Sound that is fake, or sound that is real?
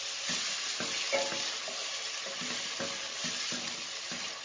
real